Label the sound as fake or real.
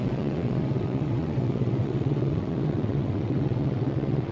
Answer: fake